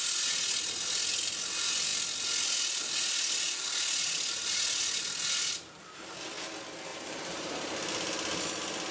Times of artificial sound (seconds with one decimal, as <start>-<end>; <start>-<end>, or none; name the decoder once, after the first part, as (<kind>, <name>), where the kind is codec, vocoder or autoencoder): 6.9-7.7 (vocoder, BigVGAN v2)